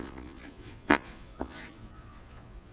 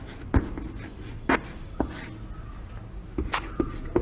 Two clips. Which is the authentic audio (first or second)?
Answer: second